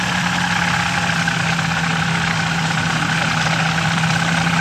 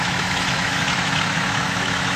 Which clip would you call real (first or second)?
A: first